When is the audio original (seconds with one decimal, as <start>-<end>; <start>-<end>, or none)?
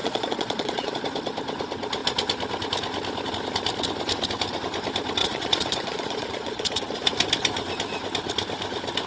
0.9-5.2; 6.8-9.1